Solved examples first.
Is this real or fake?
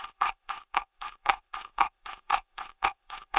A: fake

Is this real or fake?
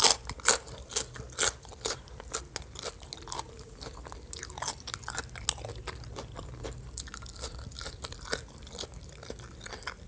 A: real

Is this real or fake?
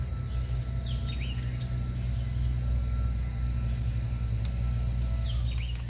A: real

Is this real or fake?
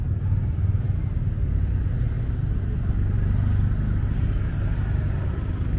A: real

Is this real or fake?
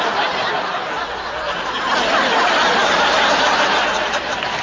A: real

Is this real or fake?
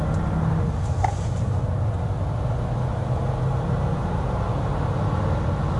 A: real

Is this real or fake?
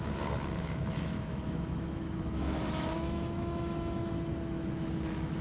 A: fake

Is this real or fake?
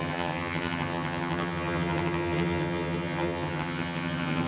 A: fake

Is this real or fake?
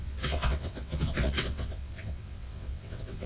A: fake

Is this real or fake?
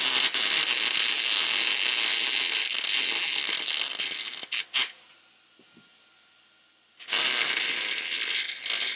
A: real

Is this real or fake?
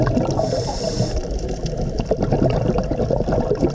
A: real